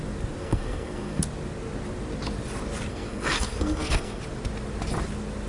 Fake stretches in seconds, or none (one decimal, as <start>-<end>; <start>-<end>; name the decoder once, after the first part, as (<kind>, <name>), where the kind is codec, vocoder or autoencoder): 0.4-1.2 (codec, SNAC); 2.9-4.2